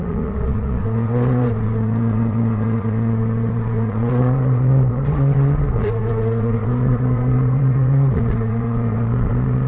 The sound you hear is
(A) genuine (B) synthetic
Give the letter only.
B